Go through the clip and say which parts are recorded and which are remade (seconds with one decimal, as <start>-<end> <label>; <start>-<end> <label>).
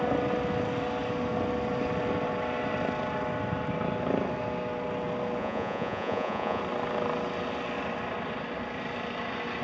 0.0-5.4 recorded; 5.4-6.6 remade; 6.6-9.6 recorded